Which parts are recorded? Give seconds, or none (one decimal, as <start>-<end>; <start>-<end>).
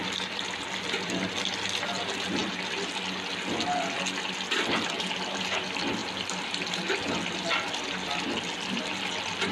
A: 0.0-9.5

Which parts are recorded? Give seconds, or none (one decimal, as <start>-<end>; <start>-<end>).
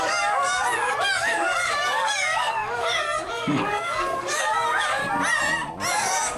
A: 5.0-5.9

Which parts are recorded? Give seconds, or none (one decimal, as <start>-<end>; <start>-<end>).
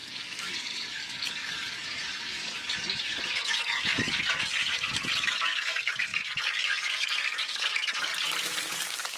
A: 8.1-8.6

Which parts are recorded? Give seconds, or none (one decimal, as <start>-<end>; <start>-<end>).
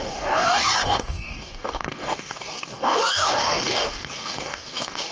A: none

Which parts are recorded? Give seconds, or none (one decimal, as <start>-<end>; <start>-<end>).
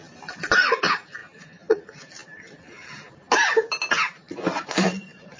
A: 0.0-5.4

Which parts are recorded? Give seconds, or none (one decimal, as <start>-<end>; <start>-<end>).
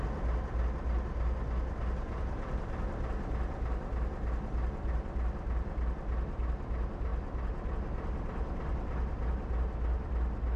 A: 0.0-10.6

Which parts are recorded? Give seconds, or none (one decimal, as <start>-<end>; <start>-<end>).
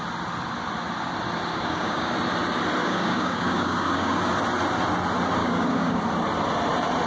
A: 0.0-1.5; 2.1-2.8; 4.2-5.4; 6.0-7.1